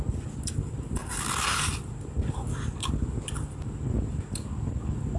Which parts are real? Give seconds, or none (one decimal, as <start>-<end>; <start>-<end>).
0.0-5.2